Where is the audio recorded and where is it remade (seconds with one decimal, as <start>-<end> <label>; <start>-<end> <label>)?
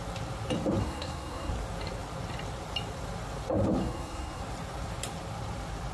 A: 0.0-0.8 recorded; 0.8-1.5 remade; 1.5-3.8 recorded; 3.8-4.4 remade; 4.4-5.9 recorded